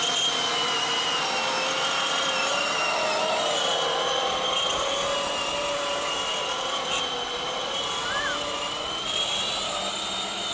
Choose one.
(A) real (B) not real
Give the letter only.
A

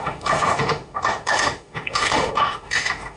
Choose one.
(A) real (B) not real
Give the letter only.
B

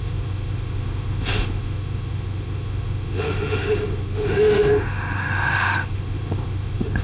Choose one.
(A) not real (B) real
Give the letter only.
A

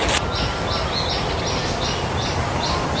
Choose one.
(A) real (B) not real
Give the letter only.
A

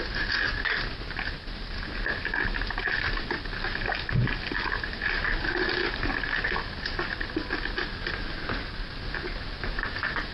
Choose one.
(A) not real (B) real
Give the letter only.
B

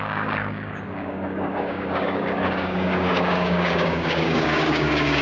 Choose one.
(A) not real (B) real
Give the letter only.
A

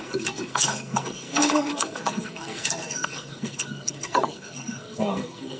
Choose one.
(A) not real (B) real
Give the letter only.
A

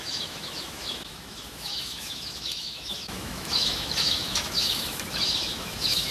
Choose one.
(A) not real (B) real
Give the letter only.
A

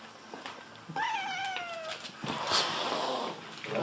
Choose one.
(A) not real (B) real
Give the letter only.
B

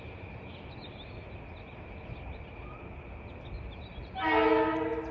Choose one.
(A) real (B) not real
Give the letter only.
A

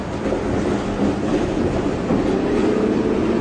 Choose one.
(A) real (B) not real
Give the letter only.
A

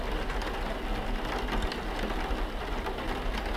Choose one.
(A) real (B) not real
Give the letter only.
A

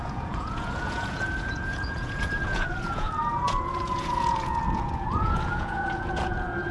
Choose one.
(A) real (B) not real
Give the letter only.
B